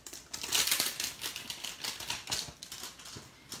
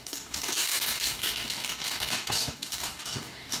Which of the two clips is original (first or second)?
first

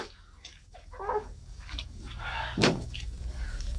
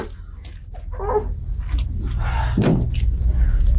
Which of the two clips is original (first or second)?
second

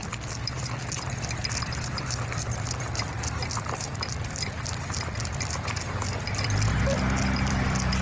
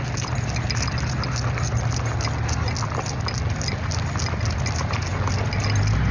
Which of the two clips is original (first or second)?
second